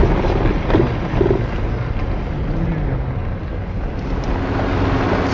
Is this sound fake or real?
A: real